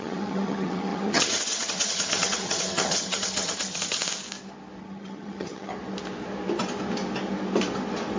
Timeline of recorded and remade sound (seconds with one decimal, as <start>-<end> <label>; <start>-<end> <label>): 0.0-4.0 remade; 4.0-4.8 recorded; 4.8-5.7 remade; 5.7-8.2 recorded